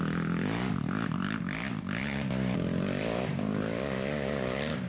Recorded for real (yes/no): yes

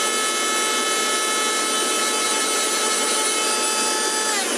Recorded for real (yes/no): yes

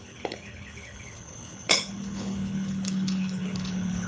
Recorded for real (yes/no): no